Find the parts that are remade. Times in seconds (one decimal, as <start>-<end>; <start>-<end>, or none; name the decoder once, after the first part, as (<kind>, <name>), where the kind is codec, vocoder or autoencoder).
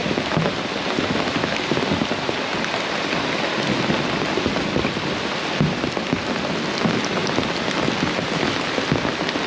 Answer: none